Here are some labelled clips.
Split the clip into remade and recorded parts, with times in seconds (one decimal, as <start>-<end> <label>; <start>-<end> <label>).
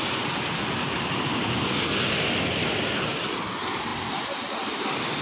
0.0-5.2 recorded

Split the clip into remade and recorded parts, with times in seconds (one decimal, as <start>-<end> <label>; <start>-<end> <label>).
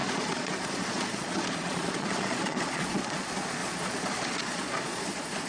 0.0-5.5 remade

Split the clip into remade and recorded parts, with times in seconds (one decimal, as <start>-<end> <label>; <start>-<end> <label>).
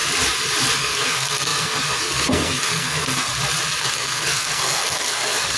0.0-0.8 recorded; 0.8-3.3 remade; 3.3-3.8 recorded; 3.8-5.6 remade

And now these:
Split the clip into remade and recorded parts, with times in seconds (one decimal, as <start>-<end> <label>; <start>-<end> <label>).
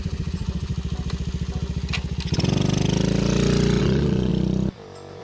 0.0-0.7 remade; 0.7-3.8 recorded; 3.8-4.3 remade; 4.3-5.2 recorded